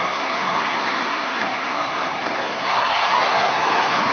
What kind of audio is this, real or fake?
fake